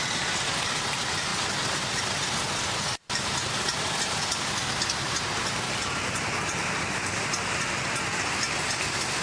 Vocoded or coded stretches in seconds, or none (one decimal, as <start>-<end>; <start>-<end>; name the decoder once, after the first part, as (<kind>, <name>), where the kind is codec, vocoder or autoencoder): none

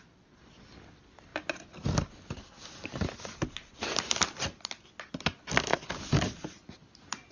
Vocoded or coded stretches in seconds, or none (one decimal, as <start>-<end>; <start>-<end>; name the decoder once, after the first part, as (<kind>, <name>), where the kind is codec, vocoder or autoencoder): none

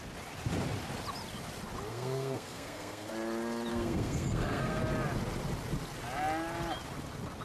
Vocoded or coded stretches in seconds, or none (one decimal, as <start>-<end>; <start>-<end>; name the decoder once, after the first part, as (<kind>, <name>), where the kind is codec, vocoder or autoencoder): 1.9-3.1 (codec, SNAC); 3.7-4.8

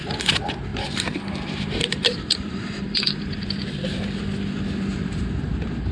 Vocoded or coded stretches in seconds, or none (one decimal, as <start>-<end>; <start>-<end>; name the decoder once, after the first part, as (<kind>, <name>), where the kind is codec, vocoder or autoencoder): 0.7-4.2 (vocoder, BigVGAN v2); 4.9-5.5